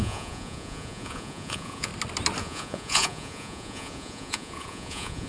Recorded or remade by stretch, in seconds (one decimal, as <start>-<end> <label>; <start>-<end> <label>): 0.0-1.9 remade; 1.9-2.4 recorded; 2.4-5.3 remade